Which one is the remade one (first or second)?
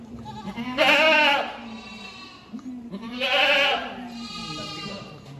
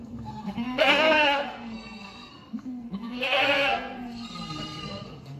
second